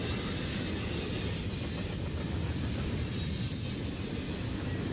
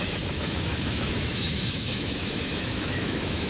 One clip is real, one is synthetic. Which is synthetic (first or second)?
second